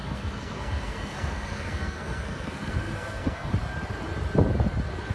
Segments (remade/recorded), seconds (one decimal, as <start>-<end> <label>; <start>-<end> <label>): 0.0-3.5 remade; 3.5-5.1 recorded